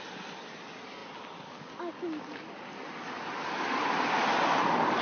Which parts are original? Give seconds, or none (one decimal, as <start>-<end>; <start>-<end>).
0.0-5.0